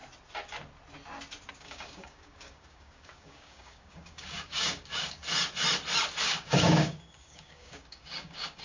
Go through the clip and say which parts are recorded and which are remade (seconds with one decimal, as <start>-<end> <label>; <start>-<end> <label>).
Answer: 0.0-1.5 recorded; 1.5-5.2 remade; 5.2-6.2 recorded; 6.2-8.6 remade